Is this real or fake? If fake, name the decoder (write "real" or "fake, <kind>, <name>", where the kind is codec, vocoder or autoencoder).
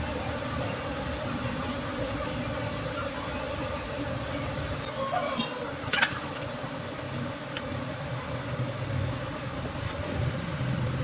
real